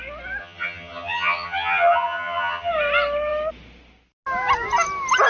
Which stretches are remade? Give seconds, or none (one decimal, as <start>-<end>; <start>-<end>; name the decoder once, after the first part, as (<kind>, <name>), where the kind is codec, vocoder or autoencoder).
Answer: 0.4-2.7 (vocoder, HiFi-GAN)